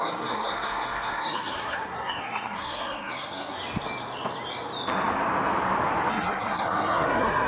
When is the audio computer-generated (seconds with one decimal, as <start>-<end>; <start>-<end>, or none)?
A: 0.0-3.6; 6.1-7.5